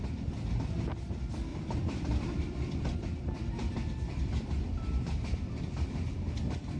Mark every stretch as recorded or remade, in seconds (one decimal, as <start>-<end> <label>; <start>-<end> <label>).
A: 0.0-1.5 recorded; 1.5-5.6 remade; 5.6-6.8 recorded